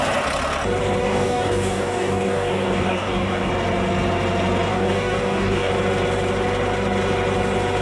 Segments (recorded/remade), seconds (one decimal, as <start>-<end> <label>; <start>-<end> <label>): 0.0-1.0 recorded; 1.0-3.5 remade; 3.5-4.7 recorded; 4.7-5.7 remade; 5.7-7.8 recorded